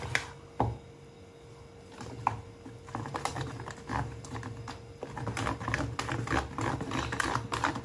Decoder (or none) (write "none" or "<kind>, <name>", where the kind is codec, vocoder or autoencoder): none